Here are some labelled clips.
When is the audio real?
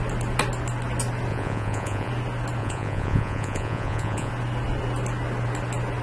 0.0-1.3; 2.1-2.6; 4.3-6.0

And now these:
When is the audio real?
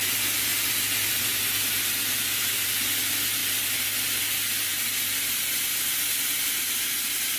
0.0-7.4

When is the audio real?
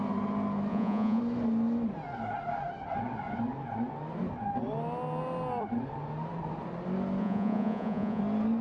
0.0-0.7; 1.2-7.2; 8.2-8.6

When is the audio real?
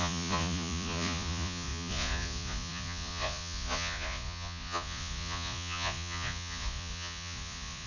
none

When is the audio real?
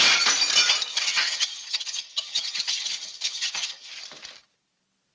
0.0-0.9; 3.9-5.1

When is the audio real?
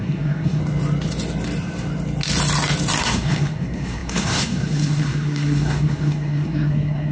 0.6-3.0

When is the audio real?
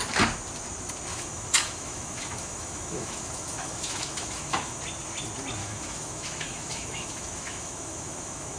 0.0-1.1; 4.8-5.6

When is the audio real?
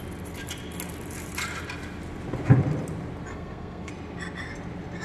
0.0-3.3; 3.9-5.0